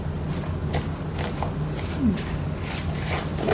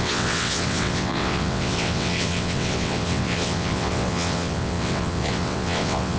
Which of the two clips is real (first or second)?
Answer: first